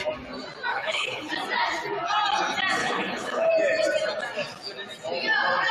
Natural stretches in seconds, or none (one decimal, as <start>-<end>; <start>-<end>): 0.0-0.7; 1.3-2.8; 3.5-5.7